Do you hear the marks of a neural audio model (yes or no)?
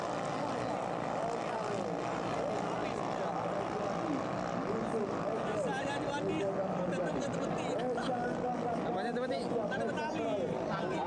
no